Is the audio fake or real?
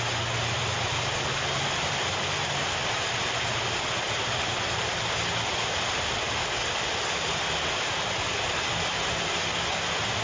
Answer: real